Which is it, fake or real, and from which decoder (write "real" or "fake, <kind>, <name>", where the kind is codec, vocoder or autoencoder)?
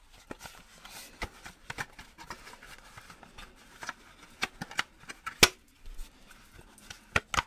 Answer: real